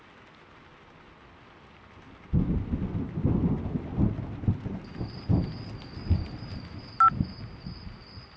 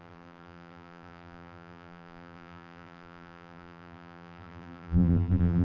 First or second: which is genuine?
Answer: first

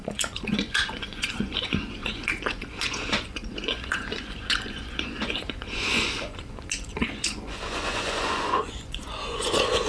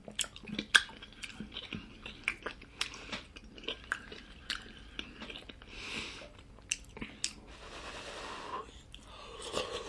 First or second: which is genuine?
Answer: second